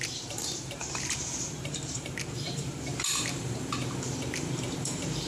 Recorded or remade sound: remade